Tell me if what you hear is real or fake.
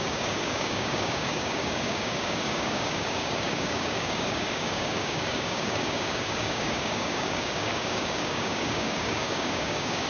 fake